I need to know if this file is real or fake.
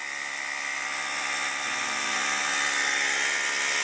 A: real